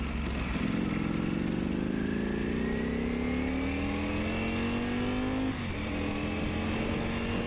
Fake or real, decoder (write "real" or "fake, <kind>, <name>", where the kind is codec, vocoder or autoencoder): real